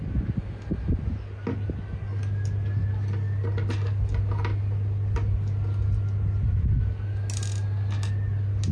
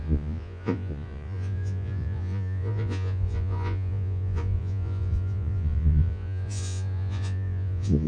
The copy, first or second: second